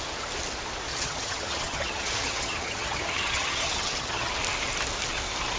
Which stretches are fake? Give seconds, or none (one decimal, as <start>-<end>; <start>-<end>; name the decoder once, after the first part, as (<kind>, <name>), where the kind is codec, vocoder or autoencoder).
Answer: 0.9-4.3 (vocoder, HiFi-GAN)